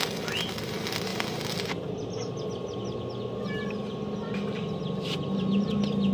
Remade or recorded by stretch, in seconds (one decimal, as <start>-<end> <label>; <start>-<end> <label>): 0.0-6.1 recorded